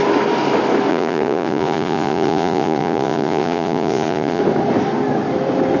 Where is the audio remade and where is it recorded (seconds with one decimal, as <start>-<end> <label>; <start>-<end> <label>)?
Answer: 0.0-0.9 recorded; 0.9-4.4 remade; 4.4-5.8 recorded

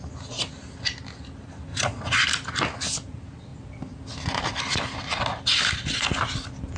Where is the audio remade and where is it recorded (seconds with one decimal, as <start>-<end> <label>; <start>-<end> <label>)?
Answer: 0.0-1.7 recorded; 1.7-2.2 remade; 2.2-6.8 recorded